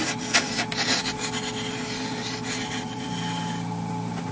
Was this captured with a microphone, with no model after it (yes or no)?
yes